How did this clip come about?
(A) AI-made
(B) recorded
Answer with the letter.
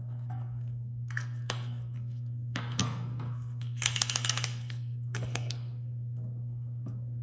A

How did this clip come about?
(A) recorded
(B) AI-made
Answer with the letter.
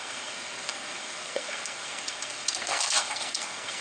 B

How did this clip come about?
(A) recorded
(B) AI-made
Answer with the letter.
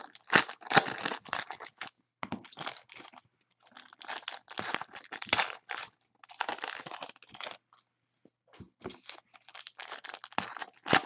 A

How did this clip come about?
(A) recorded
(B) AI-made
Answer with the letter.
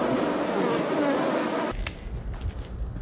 A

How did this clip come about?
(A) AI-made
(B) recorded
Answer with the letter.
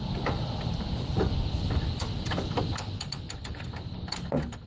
B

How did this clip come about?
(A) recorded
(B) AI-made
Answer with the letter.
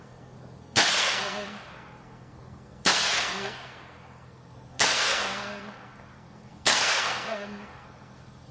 B